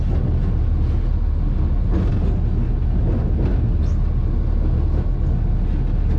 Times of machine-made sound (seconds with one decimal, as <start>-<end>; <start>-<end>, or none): none